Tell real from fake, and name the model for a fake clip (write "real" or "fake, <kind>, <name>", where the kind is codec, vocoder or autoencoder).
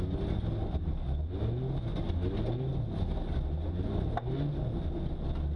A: real